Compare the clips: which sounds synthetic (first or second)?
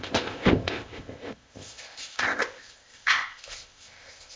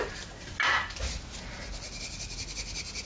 first